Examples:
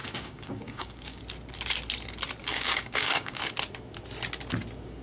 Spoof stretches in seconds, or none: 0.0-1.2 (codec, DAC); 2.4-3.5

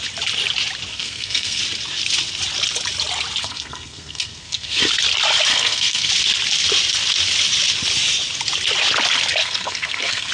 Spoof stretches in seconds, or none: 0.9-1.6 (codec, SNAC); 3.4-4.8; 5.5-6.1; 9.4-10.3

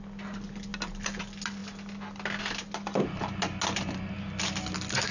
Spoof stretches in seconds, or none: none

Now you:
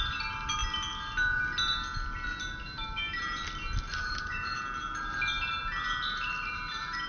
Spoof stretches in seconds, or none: 4.0-4.6 (autoencoder, DAC-VAE)

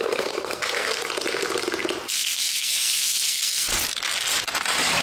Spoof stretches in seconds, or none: 0.0-1.0 (codec, SNAC); 2.0-3.7

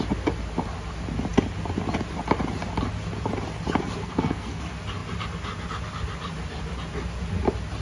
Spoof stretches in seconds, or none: 4.0-4.6 (codec, SNAC)

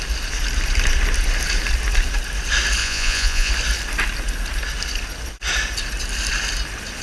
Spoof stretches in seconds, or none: 2.8-3.5 (vocoder, Vocos)